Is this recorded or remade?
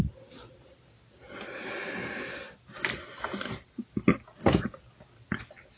recorded